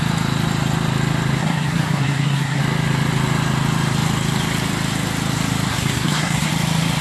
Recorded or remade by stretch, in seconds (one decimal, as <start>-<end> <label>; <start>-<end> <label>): 0.0-1.4 recorded; 1.4-2.6 remade; 2.6-5.7 recorded; 5.7-6.5 remade; 6.5-7.0 recorded